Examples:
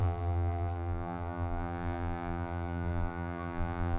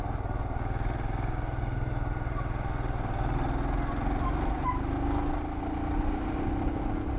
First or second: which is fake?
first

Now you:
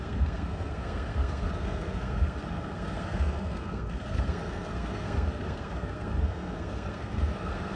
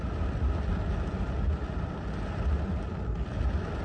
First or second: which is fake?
first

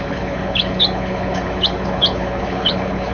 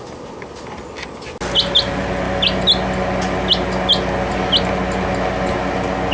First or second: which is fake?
first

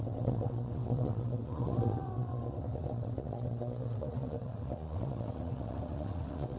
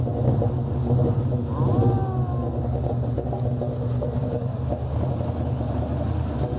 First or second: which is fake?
first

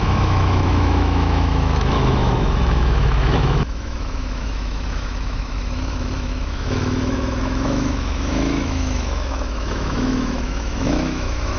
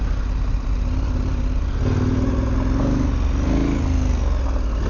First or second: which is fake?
first